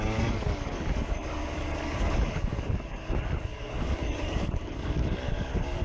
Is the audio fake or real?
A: fake